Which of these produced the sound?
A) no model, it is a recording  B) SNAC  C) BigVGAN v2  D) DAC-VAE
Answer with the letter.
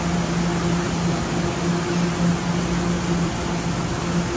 A